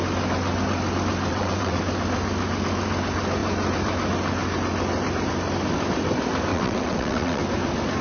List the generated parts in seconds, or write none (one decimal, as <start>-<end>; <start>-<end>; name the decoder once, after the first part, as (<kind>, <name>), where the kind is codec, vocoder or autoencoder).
1.3-1.8 (vocoder, WaveNeXt); 6.5-7.4